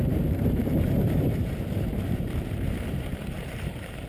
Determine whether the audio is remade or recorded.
remade